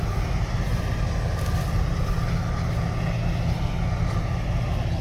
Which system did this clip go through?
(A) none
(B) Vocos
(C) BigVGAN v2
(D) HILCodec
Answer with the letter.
A